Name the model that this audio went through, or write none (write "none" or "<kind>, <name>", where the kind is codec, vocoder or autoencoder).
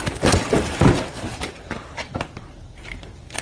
vocoder, BigVGAN v2